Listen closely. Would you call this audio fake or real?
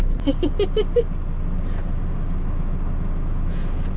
real